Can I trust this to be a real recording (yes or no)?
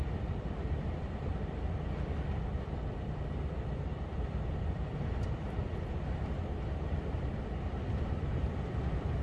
no